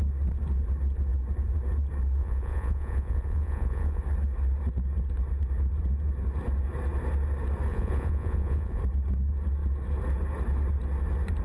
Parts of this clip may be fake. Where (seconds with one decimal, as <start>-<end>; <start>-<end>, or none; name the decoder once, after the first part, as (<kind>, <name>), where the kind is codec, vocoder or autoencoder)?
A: 2.2-4.0 (vocoder, Vocos); 7.7-8.8